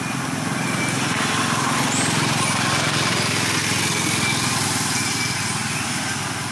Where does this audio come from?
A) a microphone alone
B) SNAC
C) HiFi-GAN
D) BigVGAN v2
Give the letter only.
A